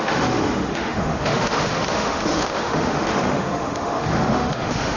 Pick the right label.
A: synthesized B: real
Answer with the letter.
A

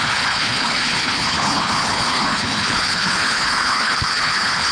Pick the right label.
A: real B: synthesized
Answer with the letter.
B